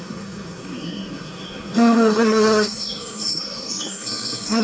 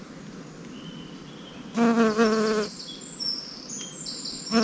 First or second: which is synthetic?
first